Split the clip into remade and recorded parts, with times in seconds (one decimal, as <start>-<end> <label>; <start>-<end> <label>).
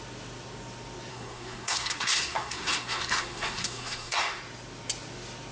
0.0-1.1 recorded; 1.1-4.4 remade; 4.4-5.5 recorded